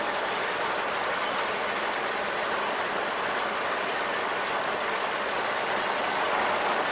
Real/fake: real